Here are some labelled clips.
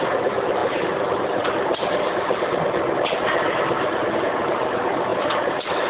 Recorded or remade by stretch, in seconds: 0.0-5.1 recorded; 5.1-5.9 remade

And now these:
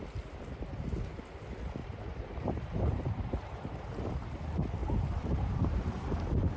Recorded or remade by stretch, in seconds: 0.0-1.8 recorded; 1.8-3.9 remade; 3.9-4.8 recorded; 4.8-6.6 remade

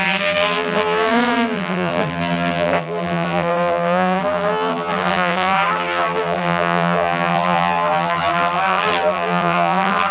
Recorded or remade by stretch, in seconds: 0.0-10.1 remade

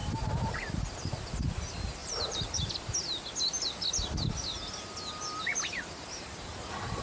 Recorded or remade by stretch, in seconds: 0.0-0.7 remade; 0.7-2.0 recorded; 2.0-2.7 remade; 2.7-7.0 recorded

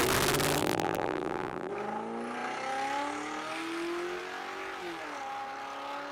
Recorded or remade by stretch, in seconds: 0.0-0.6 recorded; 0.6-1.7 remade; 1.7-6.1 recorded

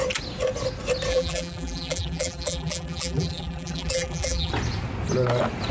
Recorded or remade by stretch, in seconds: 0.0-1.1 recorded; 1.1-4.5 remade; 4.5-5.7 recorded

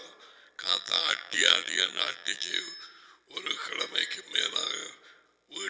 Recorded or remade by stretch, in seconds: 0.0-0.6 recorded; 0.6-2.5 remade; 2.5-5.7 recorded

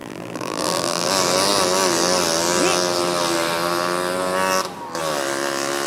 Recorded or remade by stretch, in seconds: 0.0-1.1 remade; 1.1-5.9 recorded